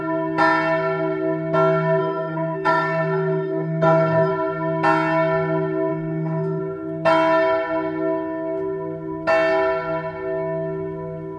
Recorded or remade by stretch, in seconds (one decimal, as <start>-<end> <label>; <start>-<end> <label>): 0.0-2.0 recorded; 2.0-4.3 remade; 4.3-5.9 recorded; 5.9-6.6 remade; 6.6-11.4 recorded